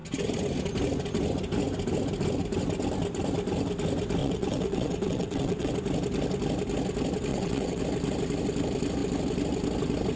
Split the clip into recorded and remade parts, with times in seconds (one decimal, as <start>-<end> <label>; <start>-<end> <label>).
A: 0.0-4.2 recorded; 4.2-5.7 remade; 5.7-7.3 recorded; 7.3-7.8 remade; 7.8-10.2 recorded

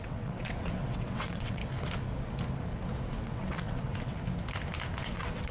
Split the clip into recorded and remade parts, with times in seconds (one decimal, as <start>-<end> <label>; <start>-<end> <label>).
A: 0.0-1.6 remade; 1.6-3.0 recorded; 3.0-4.2 remade; 4.2-5.0 recorded; 5.0-5.5 remade

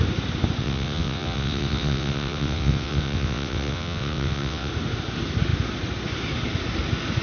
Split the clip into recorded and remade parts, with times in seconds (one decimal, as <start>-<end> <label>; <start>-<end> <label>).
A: 0.0-0.6 recorded; 0.6-4.7 remade; 4.7-7.2 recorded

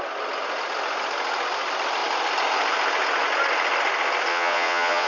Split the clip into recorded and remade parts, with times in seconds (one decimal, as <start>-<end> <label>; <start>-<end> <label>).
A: 0.0-4.3 recorded; 4.3-5.1 remade

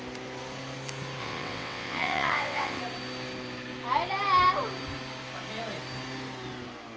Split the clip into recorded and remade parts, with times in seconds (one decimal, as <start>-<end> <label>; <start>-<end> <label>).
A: 0.0-1.2 recorded; 1.2-2.8 remade; 2.8-7.0 recorded

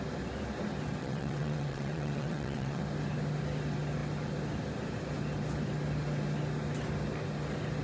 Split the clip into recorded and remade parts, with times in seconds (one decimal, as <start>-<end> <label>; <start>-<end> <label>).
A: 0.0-1.0 recorded; 1.0-2.8 remade; 2.8-7.8 recorded

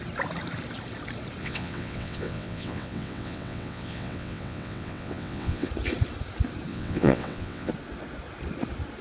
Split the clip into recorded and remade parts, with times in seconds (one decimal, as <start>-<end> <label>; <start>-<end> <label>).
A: 0.0-1.4 recorded; 1.4-5.7 remade; 5.7-6.7 recorded; 6.7-7.7 remade; 7.7-9.0 recorded

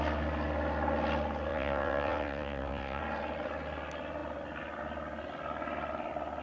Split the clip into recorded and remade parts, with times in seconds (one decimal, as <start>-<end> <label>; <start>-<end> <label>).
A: 0.0-1.5 recorded; 1.5-3.0 remade; 3.0-6.4 recorded